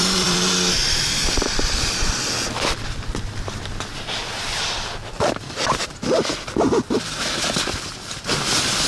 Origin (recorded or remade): remade